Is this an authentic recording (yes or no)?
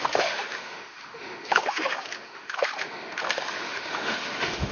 no